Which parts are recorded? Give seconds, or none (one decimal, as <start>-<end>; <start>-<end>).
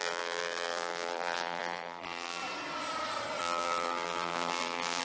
2.4-3.4